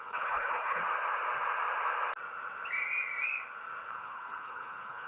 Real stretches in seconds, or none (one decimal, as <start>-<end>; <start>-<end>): 0.8-3.9